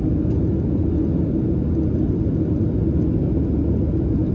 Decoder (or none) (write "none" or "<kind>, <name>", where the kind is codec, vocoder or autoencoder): none